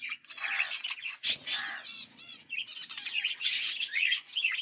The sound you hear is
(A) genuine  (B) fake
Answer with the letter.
B